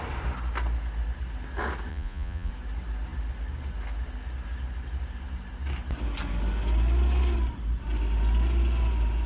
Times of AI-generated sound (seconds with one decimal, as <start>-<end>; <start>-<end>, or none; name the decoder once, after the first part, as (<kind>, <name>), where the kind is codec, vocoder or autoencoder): 1.9-2.5 (vocoder, Vocos)